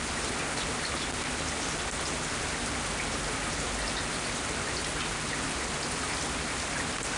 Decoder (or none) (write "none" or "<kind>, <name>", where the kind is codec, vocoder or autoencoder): none